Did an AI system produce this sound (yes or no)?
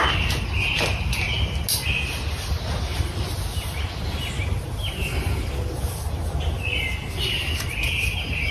no